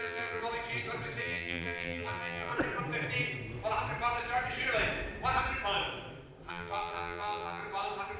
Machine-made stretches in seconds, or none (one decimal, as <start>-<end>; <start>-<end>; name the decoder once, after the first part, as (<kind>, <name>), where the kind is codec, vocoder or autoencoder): 0.0-0.4 (vocoder, BigVGAN v2); 1.2-2.5; 6.5-7.6